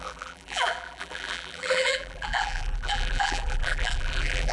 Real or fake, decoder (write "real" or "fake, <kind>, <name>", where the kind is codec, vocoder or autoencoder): fake, vocoder, BigVGAN v2